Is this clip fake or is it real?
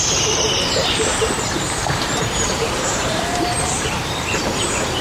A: fake